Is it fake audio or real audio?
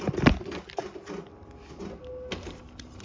real